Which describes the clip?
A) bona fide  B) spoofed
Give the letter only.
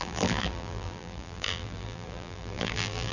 B